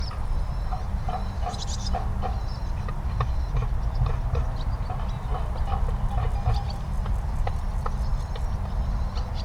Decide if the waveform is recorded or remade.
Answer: recorded